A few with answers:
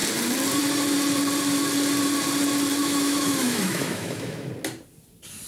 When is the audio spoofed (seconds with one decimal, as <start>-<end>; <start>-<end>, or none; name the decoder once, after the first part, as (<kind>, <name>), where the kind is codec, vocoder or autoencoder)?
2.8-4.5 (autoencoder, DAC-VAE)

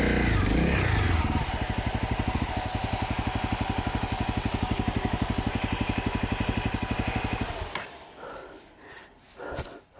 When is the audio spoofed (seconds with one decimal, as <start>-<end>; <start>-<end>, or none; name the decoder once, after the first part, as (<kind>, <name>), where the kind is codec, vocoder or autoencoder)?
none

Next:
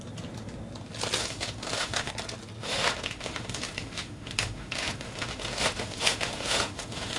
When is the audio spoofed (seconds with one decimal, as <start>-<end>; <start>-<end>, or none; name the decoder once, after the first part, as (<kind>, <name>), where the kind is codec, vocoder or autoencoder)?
1.2-2.1 (autoencoder, DAC-VAE); 2.6-7.2

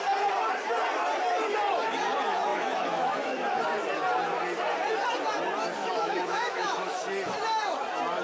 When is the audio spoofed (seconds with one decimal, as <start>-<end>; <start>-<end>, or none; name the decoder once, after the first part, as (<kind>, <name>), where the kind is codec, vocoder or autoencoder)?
2.5-3.6 (autoencoder, DAC-VAE); 5.8-7.0